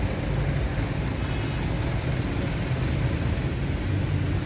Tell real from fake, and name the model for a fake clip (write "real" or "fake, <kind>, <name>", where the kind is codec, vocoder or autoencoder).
real